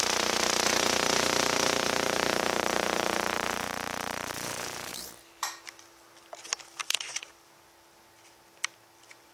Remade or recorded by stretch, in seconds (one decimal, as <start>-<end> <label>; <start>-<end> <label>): 0.0-0.7 recorded; 0.7-5.1 remade; 5.1-6.8 recorded; 6.8-7.3 remade; 7.3-9.3 recorded